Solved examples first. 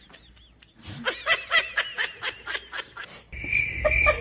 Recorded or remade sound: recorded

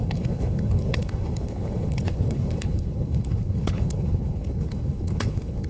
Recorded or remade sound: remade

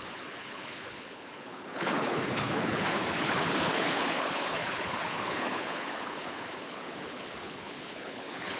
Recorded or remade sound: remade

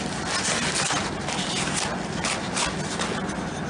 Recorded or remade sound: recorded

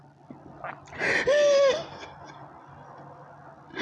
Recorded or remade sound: recorded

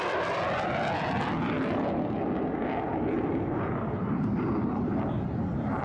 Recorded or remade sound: recorded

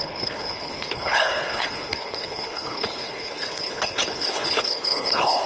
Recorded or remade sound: remade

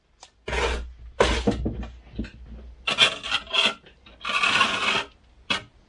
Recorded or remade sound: recorded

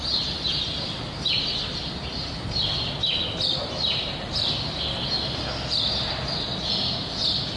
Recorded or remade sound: recorded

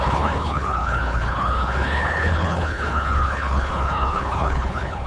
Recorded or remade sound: remade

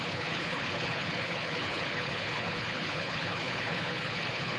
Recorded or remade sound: remade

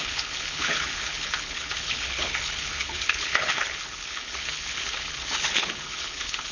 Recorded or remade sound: remade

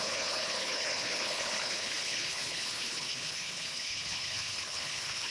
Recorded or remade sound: remade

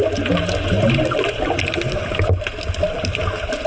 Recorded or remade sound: recorded